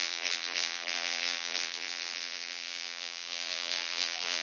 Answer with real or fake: fake